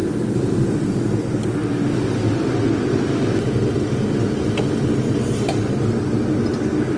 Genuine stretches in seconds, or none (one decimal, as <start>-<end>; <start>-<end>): 0.0-7.0